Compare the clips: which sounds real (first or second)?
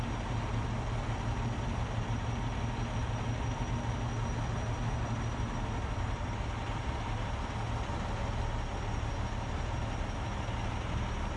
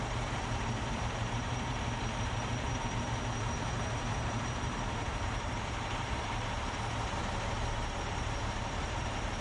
first